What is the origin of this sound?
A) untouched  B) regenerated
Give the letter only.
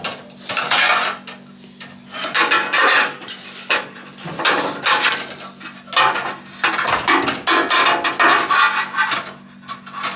A